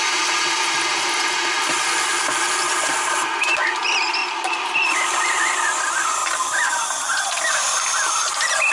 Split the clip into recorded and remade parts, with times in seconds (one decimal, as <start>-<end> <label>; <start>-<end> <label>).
0.0-6.2 recorded; 6.2-7.4 remade; 7.4-8.7 recorded